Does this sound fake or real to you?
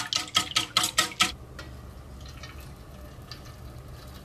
real